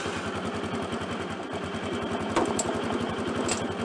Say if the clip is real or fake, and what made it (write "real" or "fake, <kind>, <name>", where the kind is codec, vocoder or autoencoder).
real